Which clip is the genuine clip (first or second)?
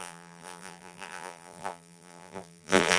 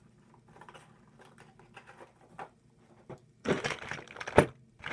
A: second